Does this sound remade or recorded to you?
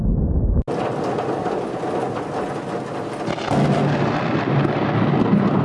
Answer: recorded